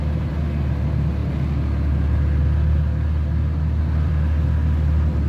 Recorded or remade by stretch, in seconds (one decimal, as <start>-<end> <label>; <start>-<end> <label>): 0.0-5.3 recorded